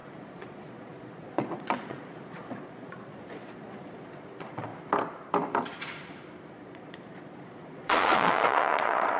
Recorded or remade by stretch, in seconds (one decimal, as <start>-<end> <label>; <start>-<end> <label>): 0.0-4.7 remade; 4.7-6.5 recorded; 6.5-9.2 remade